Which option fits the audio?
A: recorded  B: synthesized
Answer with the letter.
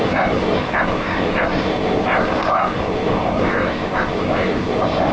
B